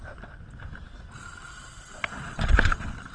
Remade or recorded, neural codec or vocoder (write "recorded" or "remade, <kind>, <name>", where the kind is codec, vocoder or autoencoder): remade, vocoder, BigVGAN v2